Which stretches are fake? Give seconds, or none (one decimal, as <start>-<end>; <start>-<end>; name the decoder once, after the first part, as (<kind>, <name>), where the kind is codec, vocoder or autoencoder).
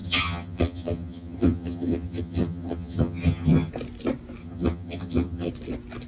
0.0-3.7 (vocoder, HiFi-GAN); 4.4-5.5